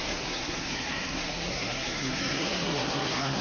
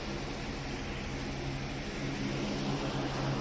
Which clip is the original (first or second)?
second